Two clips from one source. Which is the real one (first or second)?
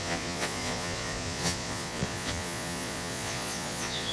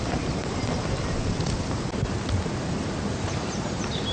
second